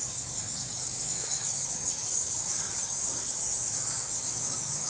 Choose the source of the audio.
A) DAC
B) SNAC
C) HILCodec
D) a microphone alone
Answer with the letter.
A